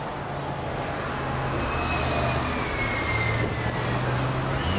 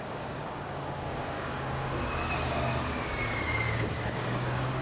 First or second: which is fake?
second